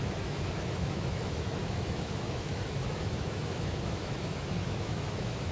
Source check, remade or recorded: remade